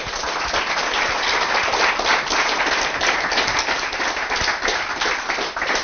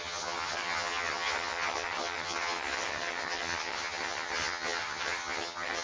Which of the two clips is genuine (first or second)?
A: first